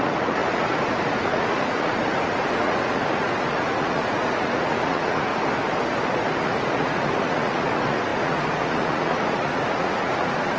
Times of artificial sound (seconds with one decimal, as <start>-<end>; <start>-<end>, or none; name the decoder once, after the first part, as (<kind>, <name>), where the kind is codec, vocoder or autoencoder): 0.0-5.3 (vocoder, Vocos); 6.4-10.6

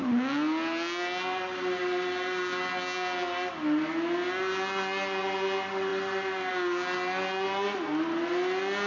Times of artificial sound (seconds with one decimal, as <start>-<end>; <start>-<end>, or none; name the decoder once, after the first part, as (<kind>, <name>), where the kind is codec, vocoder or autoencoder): none

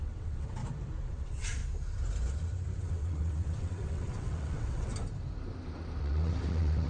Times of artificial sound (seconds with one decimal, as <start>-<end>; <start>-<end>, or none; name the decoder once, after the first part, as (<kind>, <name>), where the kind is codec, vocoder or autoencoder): 0.0-0.6 (vocoder, WaveNeXt); 1.1-1.6; 2.8-4.9; 6.0-6.9

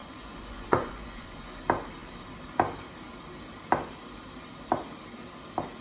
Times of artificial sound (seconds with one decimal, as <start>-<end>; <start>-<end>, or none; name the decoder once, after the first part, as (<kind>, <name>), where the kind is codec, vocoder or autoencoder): 0.0-1.6 (vocoder, Vocos)

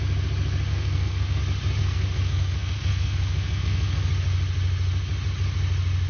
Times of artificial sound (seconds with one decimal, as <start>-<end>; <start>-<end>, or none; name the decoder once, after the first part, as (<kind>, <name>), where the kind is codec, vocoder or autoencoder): 0.7-1.4 (codec, SNAC); 1.8-4.1

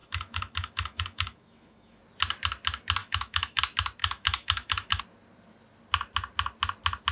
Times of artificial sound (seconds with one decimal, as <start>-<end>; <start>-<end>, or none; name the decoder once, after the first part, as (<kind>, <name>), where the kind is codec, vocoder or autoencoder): 0.0-2.0 (autoencoder, DAC-VAE); 3.0-3.6; 4.0-5.0